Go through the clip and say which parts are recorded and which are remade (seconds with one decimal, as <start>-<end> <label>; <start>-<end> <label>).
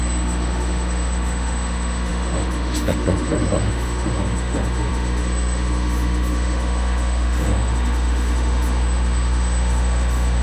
0.0-10.4 remade